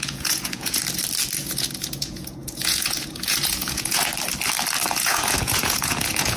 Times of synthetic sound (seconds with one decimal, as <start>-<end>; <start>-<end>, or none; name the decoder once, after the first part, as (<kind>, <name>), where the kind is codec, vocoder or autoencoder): 0.0-0.8 (vocoder, Vocos); 1.4-4.1; 4.9-6.4

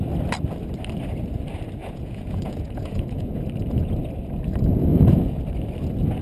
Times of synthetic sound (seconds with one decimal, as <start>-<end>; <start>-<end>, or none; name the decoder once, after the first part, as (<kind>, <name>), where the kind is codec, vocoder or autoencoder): 1.8-3.4 (vocoder, Vocos); 4.9-5.4

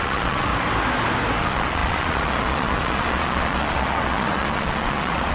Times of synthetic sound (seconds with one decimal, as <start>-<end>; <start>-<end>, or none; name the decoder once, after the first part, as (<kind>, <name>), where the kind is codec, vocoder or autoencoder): 0.0-0.5 (vocoder, Vocos); 1.4-5.3

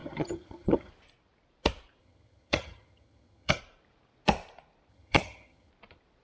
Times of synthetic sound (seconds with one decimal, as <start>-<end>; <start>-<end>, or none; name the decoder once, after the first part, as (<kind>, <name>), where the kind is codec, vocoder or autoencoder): 0.0-0.9 (vocoder, HiFi-GAN); 2.0-3.6; 4.9-5.7

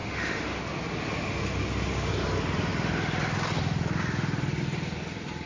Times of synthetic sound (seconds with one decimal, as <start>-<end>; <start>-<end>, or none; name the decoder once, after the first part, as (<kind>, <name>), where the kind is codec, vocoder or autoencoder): 0.0-0.6 (autoencoder, DAC-VAE)